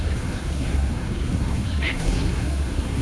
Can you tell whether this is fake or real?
fake